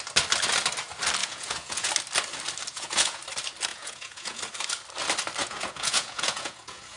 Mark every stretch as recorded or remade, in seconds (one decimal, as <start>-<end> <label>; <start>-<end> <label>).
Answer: 0.0-1.2 recorded; 1.2-1.9 remade; 1.9-2.7 recorded; 2.7-3.2 remade; 3.2-3.7 recorded; 3.7-4.4 remade; 4.4-5.4 recorded; 5.4-7.0 remade